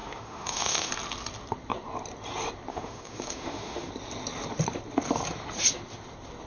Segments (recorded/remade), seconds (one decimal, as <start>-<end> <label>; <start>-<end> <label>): 0.0-0.9 remade; 0.9-2.7 recorded; 2.7-3.9 remade; 3.9-6.5 recorded

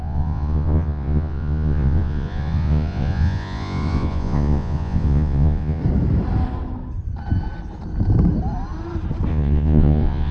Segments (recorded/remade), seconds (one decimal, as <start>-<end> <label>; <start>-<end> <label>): 0.0-5.8 remade; 5.8-9.3 recorded; 9.3-10.3 remade

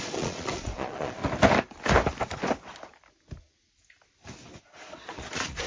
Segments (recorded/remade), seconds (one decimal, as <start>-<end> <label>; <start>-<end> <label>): 0.0-1.2 remade; 1.2-4.6 recorded; 4.6-5.7 remade

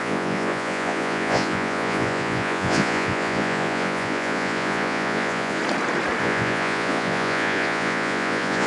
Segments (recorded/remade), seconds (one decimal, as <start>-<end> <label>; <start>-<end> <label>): 0.0-5.6 remade; 5.6-6.2 recorded; 6.2-8.7 remade

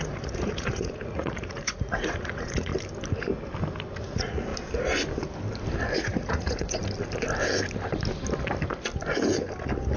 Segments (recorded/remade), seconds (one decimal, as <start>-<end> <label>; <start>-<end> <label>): 0.0-2.7 remade; 2.7-4.0 recorded; 4.0-4.5 remade; 4.5-6.0 recorded; 6.0-6.8 remade; 6.8-10.0 recorded

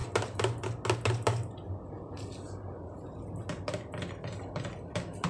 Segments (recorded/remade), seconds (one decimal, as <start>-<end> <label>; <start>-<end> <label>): 0.0-5.3 recorded

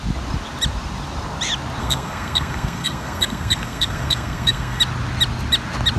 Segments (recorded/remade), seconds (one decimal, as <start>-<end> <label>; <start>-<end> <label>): 0.0-1.8 recorded; 1.8-4.8 remade; 4.8-6.0 recorded

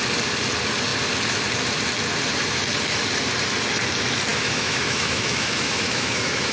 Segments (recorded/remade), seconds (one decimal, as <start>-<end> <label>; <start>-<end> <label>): 0.0-4.3 recorded; 4.3-6.5 remade